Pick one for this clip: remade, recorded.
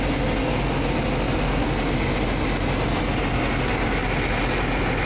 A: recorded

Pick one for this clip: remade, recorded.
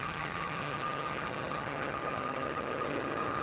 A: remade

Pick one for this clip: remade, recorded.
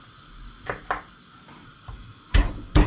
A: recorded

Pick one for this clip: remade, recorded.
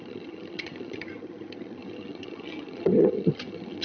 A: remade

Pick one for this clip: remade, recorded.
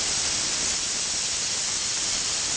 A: recorded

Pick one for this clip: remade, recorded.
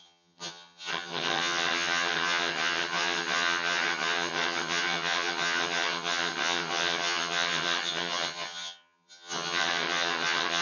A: remade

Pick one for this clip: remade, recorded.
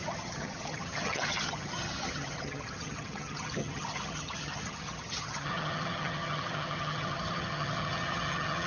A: remade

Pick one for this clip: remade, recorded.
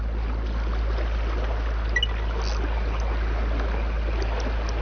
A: recorded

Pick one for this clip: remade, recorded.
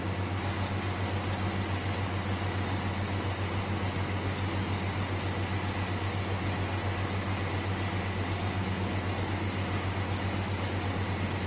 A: recorded